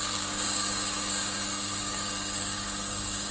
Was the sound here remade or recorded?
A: remade